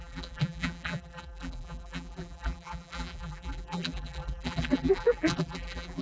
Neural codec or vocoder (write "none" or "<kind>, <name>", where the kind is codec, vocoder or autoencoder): vocoder, BigVGAN v2